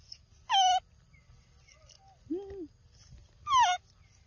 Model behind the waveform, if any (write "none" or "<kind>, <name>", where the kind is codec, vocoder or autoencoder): none